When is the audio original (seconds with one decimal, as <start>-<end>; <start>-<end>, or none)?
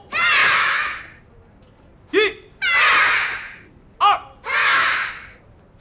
0.0-0.4; 1.0-4.6; 5.1-5.8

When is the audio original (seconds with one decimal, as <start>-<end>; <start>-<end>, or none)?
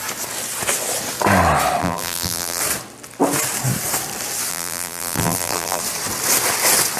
0.0-1.8; 2.6-4.5; 5.8-7.0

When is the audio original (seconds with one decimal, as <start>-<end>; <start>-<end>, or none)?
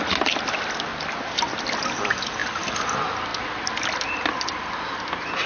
0.0-5.5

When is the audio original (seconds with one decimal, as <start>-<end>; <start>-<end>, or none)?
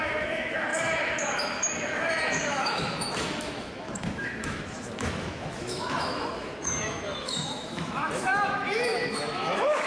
none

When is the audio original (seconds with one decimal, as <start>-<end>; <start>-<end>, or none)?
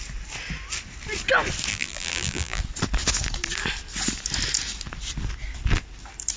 0.0-1.7; 2.6-6.4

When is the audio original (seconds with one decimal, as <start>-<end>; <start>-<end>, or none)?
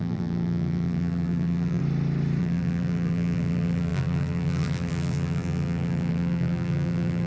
1.8-2.4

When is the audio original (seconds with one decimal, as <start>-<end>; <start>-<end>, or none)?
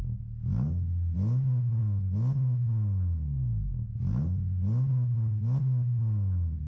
0.0-6.7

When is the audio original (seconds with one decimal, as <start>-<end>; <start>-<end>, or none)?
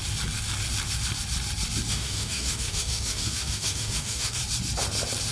0.0-1.9; 4.4-5.3